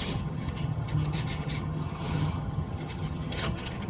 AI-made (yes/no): yes